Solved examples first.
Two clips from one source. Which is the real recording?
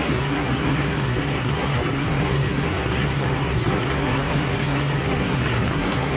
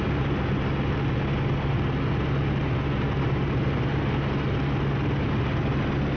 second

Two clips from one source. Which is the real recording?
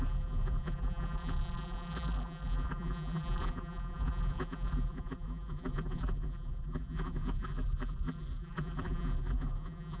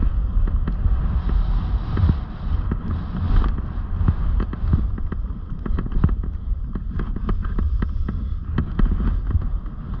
second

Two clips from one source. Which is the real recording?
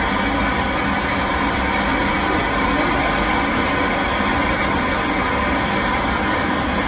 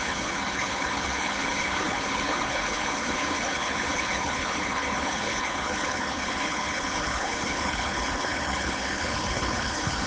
first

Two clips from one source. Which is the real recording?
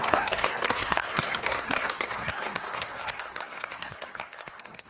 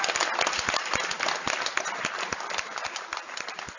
second